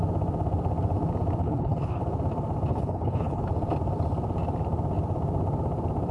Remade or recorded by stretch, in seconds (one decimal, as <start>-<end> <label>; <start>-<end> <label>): 0.0-1.4 recorded; 1.4-2.0 remade; 2.0-2.7 recorded; 2.7-3.4 remade; 3.4-6.1 recorded